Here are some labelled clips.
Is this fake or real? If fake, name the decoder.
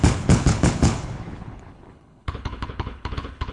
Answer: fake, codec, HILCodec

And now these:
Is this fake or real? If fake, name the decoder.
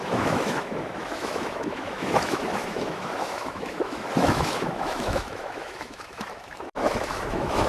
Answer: fake, autoencoder, DAC-VAE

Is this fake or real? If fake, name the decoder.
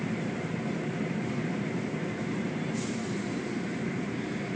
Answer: fake, vocoder, BigVGAN v2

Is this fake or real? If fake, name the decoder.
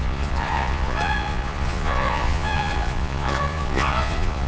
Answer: fake, vocoder, Vocos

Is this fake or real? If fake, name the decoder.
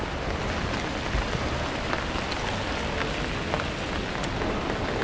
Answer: real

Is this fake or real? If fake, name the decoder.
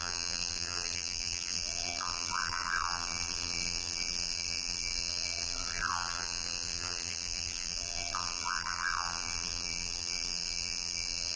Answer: fake, vocoder, BigVGAN v2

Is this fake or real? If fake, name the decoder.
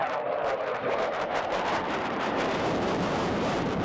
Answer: fake, vocoder, BigVGAN v2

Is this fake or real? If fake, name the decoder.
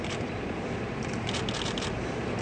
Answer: real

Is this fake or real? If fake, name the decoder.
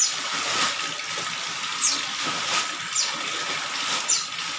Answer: real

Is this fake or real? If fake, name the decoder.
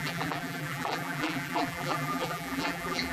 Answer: fake, vocoder, BigVGAN v2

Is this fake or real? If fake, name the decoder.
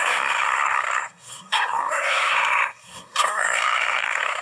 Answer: fake, codec, SNAC